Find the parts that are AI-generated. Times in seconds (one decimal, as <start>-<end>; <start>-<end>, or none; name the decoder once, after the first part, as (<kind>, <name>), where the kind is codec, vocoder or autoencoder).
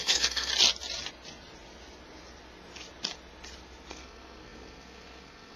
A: 0.0-0.5 (codec, SNAC); 3.9-5.6